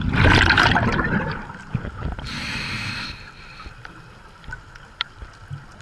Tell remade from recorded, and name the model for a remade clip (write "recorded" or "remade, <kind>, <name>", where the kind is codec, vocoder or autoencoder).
remade, vocoder, BigVGAN v2